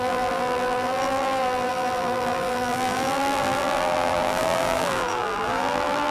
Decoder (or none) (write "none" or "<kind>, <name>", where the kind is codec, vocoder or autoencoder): vocoder, BigVGAN v2